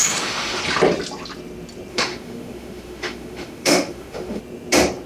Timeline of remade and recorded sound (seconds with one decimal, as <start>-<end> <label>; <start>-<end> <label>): 0.0-0.6 remade; 0.6-1.9 recorded; 1.9-4.4 remade; 4.4-5.1 recorded